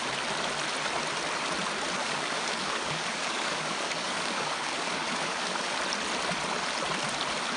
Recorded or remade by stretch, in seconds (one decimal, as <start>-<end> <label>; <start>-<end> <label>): 0.0-2.0 recorded; 2.0-5.8 remade; 5.8-7.6 recorded

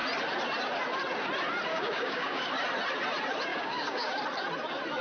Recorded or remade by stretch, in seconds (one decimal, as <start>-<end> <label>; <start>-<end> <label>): 0.0-1.7 recorded; 1.7-2.5 remade; 2.5-3.5 recorded; 3.5-4.2 remade; 4.2-5.0 recorded

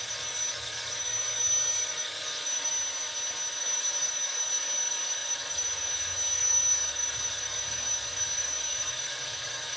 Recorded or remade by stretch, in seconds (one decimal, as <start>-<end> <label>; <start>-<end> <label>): 0.0-2.7 remade; 2.7-3.6 recorded; 3.6-9.8 remade